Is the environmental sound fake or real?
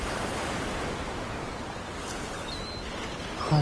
real